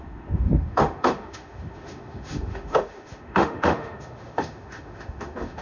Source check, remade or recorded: remade